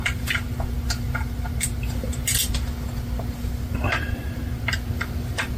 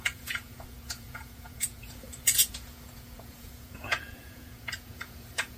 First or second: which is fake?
second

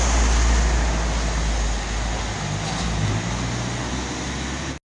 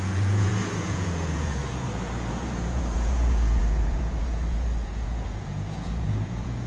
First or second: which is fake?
second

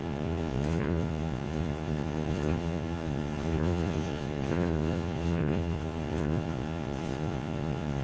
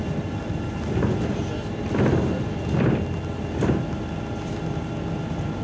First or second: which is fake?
first